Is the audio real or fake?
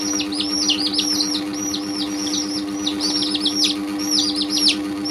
fake